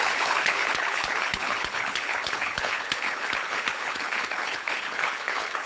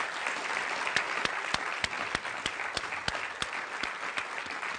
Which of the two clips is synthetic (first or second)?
first